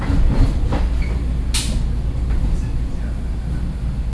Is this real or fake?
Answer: real